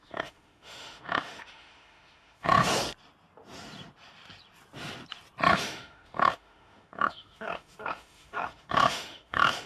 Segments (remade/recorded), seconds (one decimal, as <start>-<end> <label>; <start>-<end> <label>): 0.0-2.7 remade; 2.7-5.5 recorded; 5.5-9.7 remade